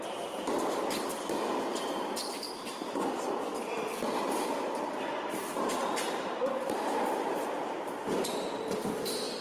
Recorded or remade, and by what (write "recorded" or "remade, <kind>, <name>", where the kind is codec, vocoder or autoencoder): recorded